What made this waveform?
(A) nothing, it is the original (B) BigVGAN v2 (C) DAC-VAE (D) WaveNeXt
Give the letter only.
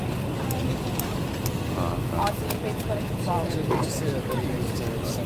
A